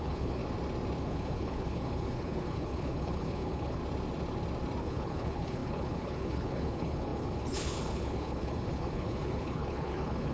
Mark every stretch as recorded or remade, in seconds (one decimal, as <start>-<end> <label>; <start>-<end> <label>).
0.0-0.4 remade; 0.4-1.0 recorded; 1.0-3.8 remade; 3.8-4.8 recorded; 4.8-10.3 remade